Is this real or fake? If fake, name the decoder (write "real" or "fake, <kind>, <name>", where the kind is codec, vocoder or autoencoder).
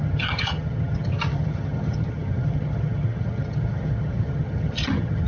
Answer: fake, vocoder, HiFi-GAN